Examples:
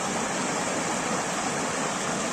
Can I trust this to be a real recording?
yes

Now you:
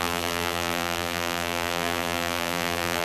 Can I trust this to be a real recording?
no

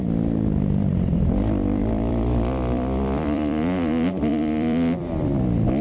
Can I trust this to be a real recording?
no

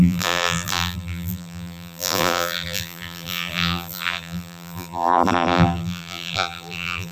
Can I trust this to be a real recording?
no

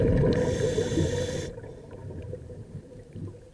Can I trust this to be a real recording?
no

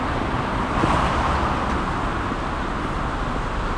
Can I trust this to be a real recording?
yes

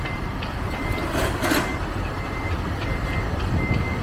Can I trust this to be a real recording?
yes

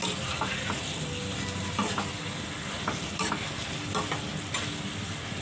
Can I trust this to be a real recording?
yes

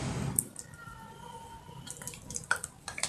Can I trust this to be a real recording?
no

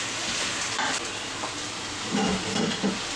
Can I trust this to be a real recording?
yes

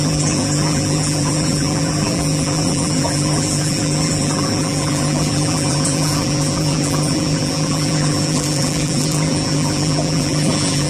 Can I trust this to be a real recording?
no